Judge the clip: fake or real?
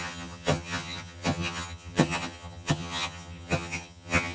fake